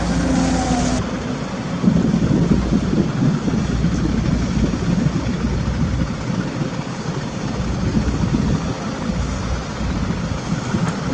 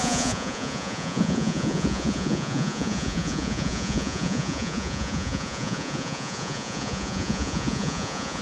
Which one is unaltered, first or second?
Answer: first